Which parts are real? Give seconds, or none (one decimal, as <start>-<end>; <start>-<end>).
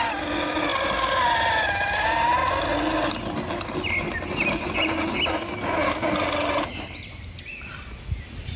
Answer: 0.0-8.6